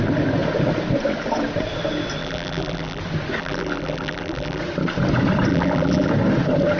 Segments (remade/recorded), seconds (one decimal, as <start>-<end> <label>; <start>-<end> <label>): 0.0-2.2 recorded; 2.2-3.0 remade; 3.0-3.4 recorded; 3.4-4.6 remade; 4.6-5.5 recorded; 5.5-6.1 remade; 6.1-6.8 recorded